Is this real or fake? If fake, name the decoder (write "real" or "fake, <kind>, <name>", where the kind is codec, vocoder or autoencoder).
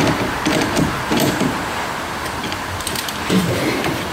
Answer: fake, vocoder, BigVGAN v2